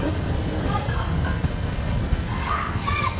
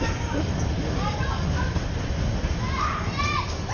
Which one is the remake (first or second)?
first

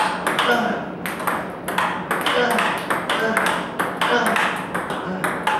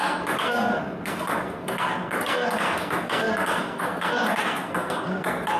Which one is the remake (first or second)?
second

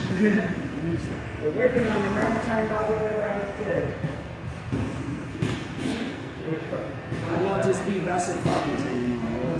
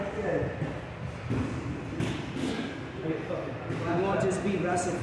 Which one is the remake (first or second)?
first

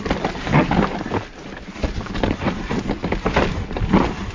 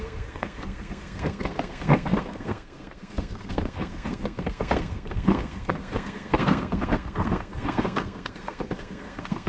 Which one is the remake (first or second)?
second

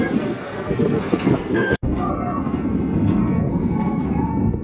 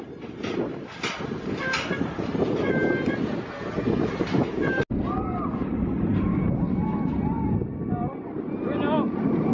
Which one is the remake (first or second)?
first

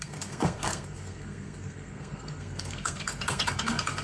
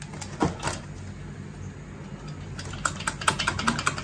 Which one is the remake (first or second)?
first